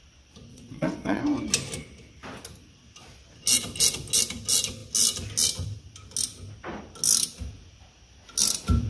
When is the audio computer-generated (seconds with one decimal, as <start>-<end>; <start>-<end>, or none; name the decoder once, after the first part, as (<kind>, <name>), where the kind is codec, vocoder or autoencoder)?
0.5-1.2 (vocoder, WaveNeXt)